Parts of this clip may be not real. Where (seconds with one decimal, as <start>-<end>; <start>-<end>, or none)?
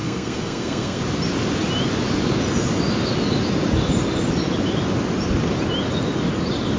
0.0-1.0